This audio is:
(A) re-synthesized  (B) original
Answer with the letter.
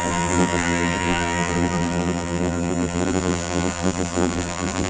A